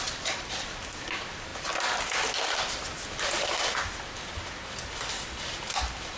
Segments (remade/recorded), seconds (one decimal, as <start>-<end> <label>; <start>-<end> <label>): 0.0-1.5 remade; 1.5-5.1 recorded; 5.1-6.2 remade

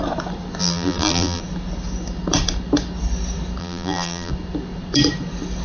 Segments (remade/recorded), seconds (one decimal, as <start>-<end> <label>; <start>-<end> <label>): 0.0-0.6 recorded; 0.6-1.4 remade; 1.4-3.6 recorded; 3.6-4.3 remade; 4.3-5.6 recorded